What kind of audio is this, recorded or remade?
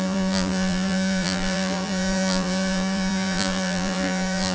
remade